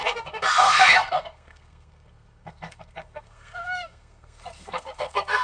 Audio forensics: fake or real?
fake